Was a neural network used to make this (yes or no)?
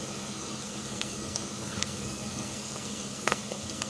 yes